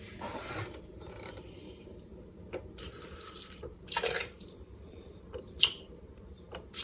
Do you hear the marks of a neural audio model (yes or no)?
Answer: yes